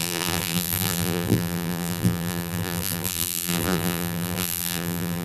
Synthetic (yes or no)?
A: yes